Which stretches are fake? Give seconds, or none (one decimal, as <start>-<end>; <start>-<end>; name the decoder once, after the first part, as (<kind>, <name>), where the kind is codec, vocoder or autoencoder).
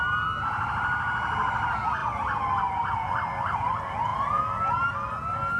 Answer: 4.1-4.7 (vocoder, BigVGAN v2)